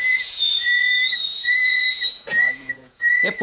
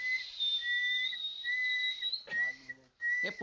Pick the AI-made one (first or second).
first